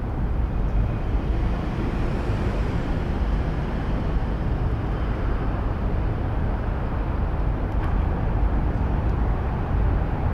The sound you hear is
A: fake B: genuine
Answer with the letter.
B